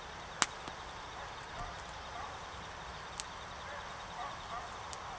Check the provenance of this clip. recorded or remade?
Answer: recorded